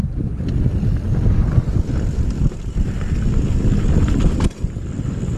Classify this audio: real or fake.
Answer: real